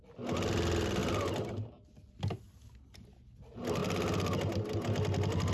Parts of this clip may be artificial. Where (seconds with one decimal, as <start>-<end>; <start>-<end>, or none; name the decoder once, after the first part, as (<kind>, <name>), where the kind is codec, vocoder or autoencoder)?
none